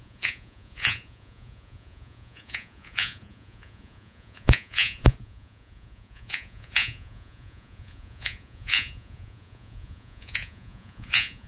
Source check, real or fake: fake